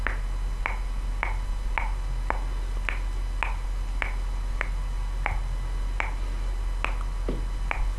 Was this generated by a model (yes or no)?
no